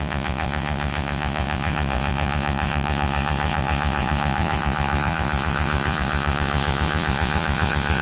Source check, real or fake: fake